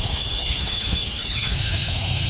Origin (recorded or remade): remade